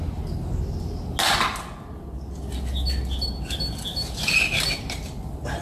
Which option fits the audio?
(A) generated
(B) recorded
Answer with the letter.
B